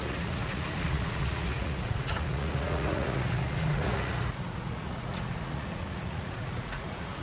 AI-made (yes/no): yes